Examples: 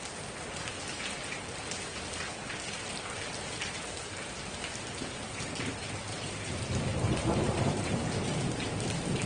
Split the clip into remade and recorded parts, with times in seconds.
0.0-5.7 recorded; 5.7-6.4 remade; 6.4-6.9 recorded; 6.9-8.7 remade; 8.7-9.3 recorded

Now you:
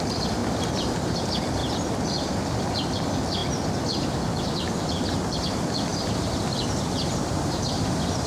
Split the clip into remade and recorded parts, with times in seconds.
0.0-1.6 remade; 1.6-2.6 recorded; 2.6-3.4 remade; 3.4-4.4 recorded; 4.4-5.9 remade; 5.9-6.8 recorded; 6.8-8.3 remade

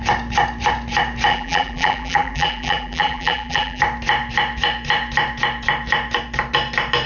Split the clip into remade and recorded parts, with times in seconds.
0.0-1.3 recorded; 1.3-3.8 remade; 3.8-7.1 recorded

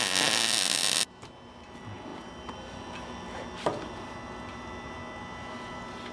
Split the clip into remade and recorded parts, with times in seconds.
0.0-6.1 recorded

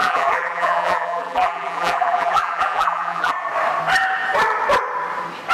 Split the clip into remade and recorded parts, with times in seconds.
0.0-3.3 remade; 3.3-5.5 recorded